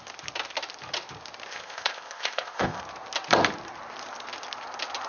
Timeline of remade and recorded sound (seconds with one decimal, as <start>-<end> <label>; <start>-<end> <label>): 0.0-1.5 recorded; 1.5-2.8 remade; 2.8-5.1 recorded